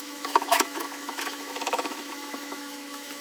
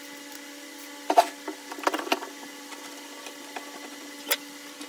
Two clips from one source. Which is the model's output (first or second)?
first